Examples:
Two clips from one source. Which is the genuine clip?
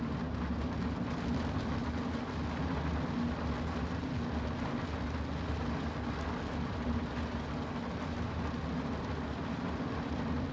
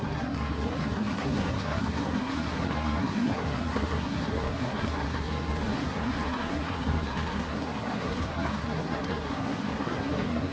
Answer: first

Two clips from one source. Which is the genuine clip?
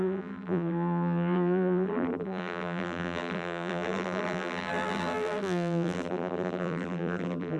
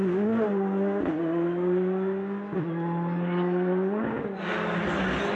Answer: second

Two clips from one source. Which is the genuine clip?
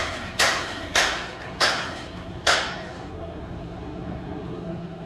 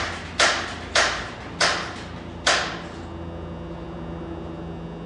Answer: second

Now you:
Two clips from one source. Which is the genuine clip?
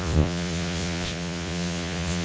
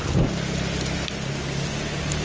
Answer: second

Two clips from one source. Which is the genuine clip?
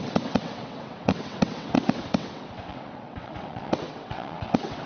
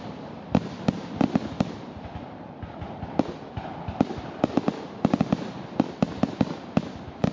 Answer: second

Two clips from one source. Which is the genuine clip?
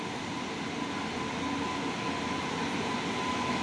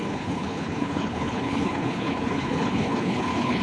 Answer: first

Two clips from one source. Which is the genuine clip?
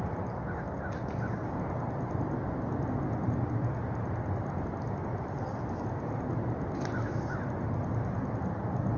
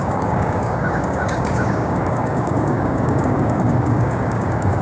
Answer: first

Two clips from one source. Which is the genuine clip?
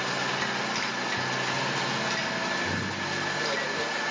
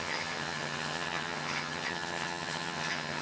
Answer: first